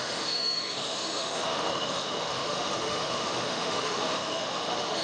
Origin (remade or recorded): remade